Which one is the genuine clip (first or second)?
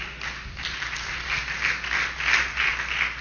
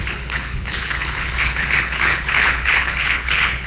first